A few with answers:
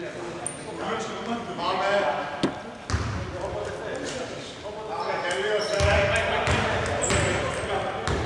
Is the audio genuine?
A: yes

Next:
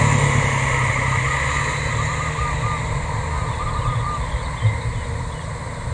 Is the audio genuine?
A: yes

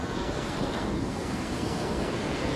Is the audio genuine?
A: no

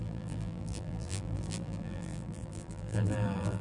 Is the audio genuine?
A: no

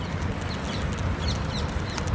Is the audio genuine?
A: yes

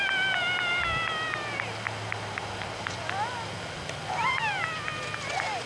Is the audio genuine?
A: yes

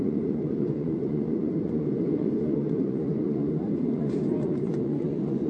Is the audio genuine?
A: no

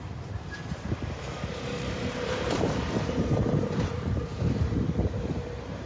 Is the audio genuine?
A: no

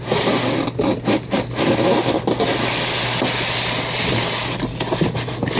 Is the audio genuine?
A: yes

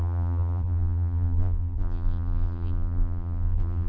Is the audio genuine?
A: no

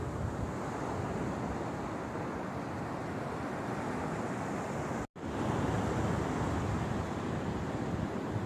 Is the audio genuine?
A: yes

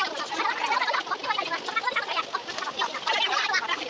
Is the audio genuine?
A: yes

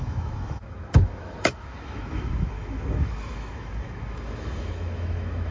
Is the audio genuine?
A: no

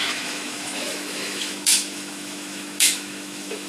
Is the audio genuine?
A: no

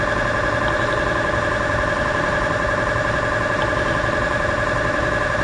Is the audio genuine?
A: yes